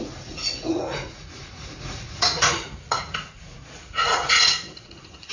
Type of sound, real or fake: fake